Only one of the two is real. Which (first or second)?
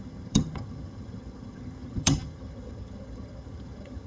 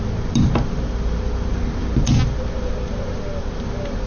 second